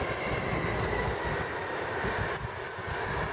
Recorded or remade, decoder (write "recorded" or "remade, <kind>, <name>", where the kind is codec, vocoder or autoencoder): recorded